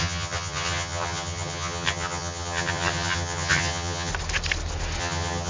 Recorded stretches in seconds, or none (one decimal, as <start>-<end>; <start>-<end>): 4.1-5.0